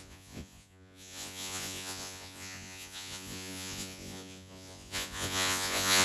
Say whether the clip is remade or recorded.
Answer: remade